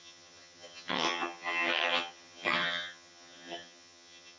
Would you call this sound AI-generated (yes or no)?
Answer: yes